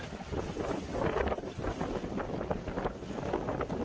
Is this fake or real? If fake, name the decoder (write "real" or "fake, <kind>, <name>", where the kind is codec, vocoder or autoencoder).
real